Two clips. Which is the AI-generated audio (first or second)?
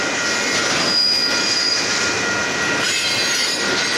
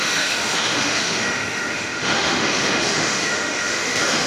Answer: second